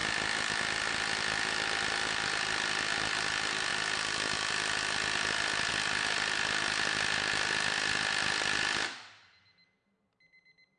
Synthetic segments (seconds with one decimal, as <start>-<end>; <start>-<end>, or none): none